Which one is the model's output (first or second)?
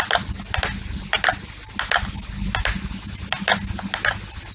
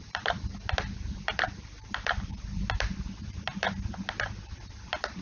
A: second